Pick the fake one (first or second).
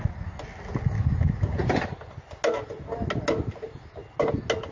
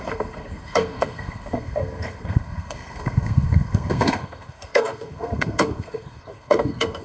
second